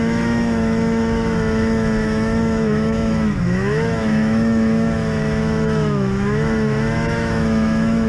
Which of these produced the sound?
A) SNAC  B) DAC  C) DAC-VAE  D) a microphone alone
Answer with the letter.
C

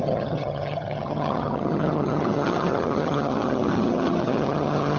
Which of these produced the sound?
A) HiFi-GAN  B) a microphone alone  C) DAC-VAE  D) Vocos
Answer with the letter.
A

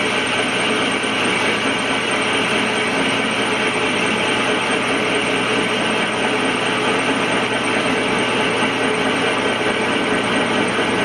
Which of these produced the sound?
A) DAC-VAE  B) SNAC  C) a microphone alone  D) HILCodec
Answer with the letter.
C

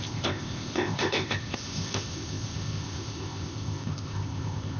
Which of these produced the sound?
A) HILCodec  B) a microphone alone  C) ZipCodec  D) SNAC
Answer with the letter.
C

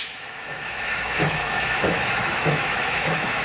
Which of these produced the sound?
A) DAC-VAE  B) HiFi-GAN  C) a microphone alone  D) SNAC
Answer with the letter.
A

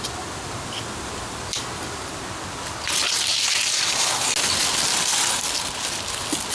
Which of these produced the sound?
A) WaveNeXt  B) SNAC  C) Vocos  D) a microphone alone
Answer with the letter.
D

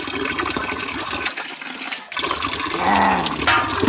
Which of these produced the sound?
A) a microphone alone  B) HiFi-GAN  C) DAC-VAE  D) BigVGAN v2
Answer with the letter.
A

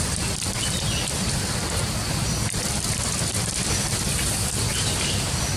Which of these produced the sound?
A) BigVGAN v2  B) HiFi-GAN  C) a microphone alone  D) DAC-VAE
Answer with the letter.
C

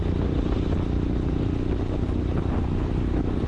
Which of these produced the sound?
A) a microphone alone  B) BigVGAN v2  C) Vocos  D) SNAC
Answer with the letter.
A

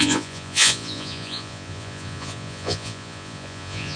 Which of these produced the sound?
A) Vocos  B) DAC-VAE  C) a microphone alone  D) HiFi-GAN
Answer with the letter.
A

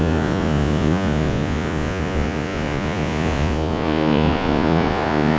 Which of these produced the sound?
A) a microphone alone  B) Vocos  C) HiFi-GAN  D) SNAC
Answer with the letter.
B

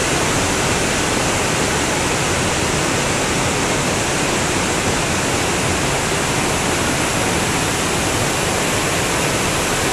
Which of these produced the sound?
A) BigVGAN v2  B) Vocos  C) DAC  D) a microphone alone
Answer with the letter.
D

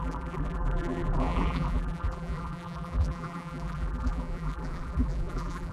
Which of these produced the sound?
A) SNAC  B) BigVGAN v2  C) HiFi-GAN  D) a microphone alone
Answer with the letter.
B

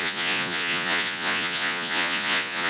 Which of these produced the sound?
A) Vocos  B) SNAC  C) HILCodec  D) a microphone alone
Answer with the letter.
A